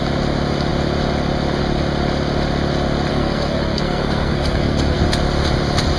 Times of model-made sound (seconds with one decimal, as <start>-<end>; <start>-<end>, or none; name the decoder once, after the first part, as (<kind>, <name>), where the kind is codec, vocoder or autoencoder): 3.1-5.0 (codec, SNAC)